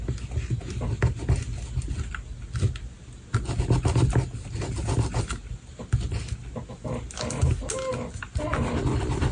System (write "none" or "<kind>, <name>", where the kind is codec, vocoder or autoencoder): none